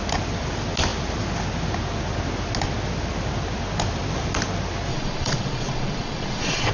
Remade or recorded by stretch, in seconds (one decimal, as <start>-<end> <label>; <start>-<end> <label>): 0.0-4.9 recorded; 4.9-6.7 remade